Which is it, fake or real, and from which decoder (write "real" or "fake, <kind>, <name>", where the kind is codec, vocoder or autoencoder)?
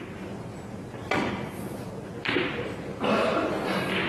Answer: real